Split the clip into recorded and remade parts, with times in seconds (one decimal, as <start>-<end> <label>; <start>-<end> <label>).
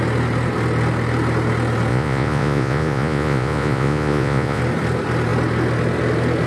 0.0-1.9 recorded; 1.9-4.6 remade; 4.6-6.5 recorded